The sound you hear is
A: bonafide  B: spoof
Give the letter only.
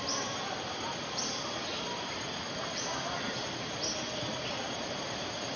A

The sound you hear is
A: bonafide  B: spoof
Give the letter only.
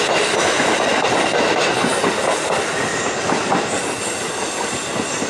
A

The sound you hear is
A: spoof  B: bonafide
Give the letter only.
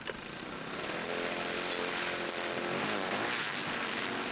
B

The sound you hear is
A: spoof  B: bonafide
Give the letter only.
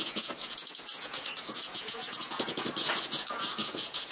A